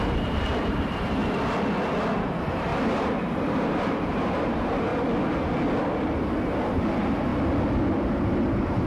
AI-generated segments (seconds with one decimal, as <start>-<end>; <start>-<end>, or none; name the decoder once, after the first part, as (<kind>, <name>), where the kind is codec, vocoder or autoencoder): 0.0-1.2 (vocoder, BigVGAN v2); 2.1-4.9; 6.2-7.3; 8.3-8.9